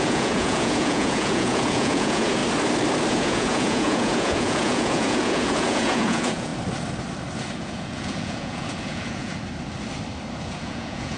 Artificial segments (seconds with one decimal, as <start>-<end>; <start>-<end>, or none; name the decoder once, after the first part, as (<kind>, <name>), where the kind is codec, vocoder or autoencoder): 0.0-2.4 (vocoder, Vocos); 3.1-6.5; 7.5-9.3; 10.4-11.2